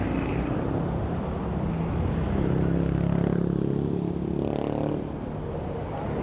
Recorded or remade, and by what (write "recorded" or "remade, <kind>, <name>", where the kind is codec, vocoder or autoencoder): recorded